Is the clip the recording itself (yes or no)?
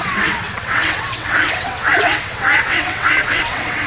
no